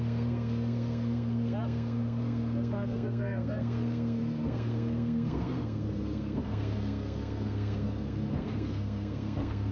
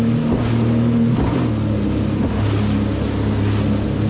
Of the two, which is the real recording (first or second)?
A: second